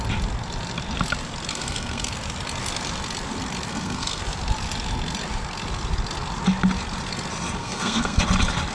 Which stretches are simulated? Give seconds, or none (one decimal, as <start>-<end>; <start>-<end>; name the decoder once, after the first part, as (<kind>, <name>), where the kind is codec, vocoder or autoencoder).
1.5-2.1 (codec, SNAC); 3.7-4.2; 7.6-8.2